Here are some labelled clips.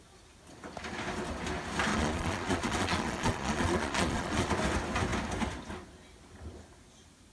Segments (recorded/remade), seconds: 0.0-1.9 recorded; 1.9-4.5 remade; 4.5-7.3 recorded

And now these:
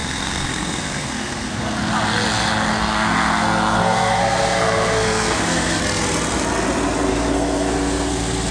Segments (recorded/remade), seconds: 0.0-1.8 remade; 1.8-2.7 recorded; 2.7-5.8 remade; 5.8-7.1 recorded; 7.1-8.1 remade; 8.1-8.5 recorded

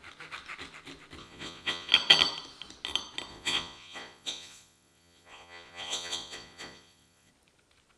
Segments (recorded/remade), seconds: 0.0-1.2 recorded; 1.2-1.9 remade; 1.9-3.3 recorded; 3.3-7.3 remade; 7.3-8.0 recorded

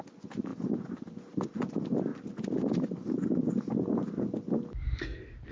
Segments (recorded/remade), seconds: 0.0-5.5 recorded

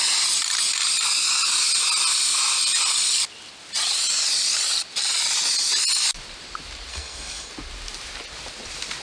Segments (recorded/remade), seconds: 0.0-6.9 recorded; 6.9-7.5 remade; 7.5-9.0 recorded

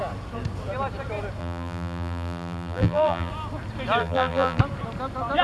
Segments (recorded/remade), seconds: 0.0-1.4 recorded; 1.4-3.3 remade; 3.3-4.0 recorded; 4.0-4.6 remade; 4.6-5.4 recorded